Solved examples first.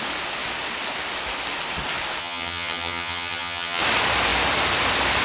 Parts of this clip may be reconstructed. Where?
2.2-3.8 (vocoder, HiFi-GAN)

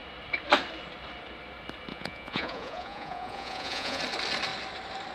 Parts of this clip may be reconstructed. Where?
1.9-4.0 (vocoder, Vocos)

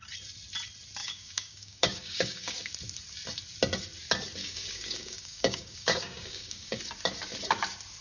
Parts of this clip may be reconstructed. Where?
1.0-2.7 (codec, DAC); 4.4-6.8

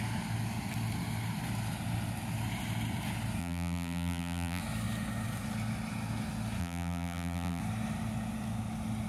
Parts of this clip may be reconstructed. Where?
3.4-4.6 (vocoder, BigVGAN v2); 6.6-7.6

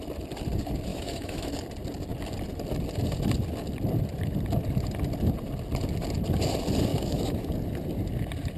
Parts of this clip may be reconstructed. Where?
0.9-1.5 (autoencoder, DAC-VAE); 6.9-7.5

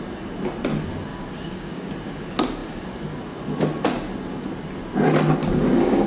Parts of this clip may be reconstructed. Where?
1.1-1.9 (codec, DAC); 5.4-6.1